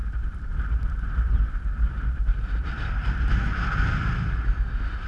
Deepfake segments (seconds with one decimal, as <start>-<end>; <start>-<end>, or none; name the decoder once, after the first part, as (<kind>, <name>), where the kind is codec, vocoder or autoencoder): 0.0-2.7 (vocoder, BigVGAN v2)